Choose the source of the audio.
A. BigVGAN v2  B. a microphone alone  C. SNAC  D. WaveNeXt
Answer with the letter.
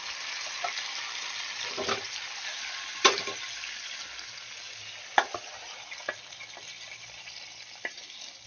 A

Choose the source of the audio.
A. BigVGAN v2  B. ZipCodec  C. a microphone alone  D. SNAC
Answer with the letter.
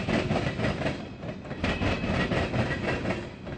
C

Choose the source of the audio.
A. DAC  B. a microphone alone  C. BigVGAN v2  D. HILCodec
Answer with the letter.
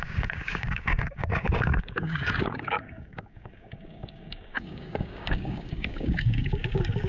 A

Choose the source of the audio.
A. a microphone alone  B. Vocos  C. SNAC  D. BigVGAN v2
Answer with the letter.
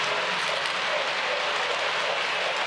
A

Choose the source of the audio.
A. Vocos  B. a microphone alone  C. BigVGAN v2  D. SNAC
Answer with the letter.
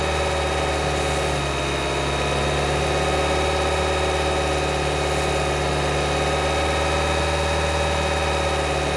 B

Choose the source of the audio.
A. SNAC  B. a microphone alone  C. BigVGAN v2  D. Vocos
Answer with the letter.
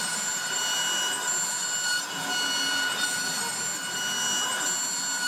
B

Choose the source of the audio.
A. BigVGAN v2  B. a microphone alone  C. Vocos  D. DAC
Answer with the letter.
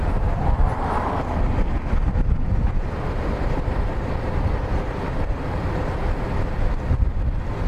B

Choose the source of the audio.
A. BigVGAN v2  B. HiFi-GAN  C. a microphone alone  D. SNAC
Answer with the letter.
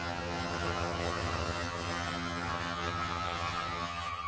B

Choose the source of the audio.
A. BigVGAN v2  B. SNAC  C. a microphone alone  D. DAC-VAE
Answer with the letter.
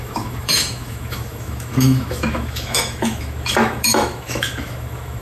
D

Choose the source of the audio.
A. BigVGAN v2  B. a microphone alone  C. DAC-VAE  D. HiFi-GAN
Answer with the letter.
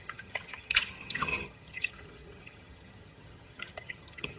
D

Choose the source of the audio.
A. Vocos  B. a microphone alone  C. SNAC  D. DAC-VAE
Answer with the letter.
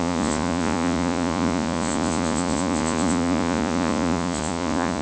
A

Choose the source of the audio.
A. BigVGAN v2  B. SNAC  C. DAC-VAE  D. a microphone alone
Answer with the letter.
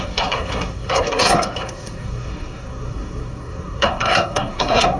B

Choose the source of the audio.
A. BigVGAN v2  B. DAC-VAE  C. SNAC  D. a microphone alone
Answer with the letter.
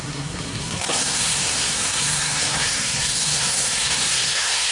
C